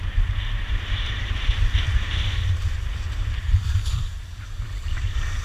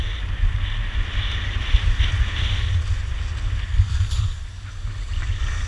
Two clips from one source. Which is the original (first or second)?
second